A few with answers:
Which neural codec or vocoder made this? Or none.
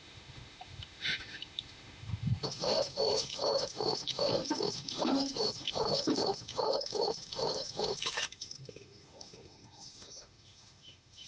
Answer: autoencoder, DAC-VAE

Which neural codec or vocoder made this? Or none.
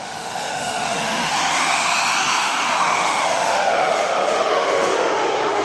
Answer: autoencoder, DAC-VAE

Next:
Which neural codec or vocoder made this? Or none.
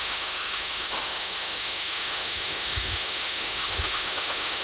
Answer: autoencoder, DAC-VAE